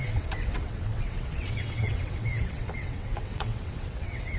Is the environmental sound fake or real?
fake